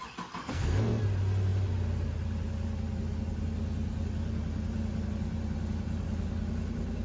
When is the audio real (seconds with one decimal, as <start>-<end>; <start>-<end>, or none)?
0.0-0.4; 1.0-7.0